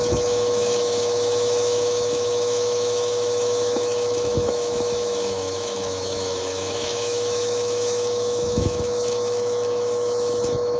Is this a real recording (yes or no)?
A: no